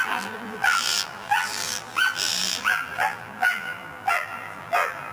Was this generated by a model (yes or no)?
yes